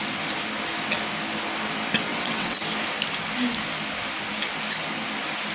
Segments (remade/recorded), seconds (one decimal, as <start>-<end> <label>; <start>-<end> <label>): 0.0-2.1 recorded; 2.1-2.6 remade; 2.6-5.5 recorded